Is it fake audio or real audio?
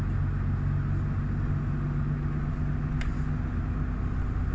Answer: real